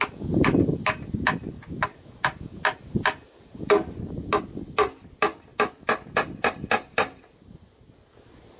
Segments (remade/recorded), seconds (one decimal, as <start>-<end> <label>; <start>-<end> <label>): 0.0-8.6 recorded